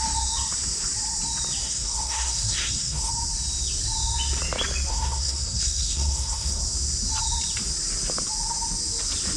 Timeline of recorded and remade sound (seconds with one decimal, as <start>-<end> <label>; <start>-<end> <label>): 0.0-1.6 recorded; 1.6-3.1 remade; 3.1-4.9 recorded; 4.9-6.6 remade; 6.6-9.4 recorded